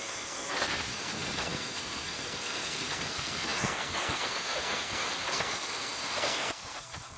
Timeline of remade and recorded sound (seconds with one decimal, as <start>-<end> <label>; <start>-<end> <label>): 0.0-7.2 remade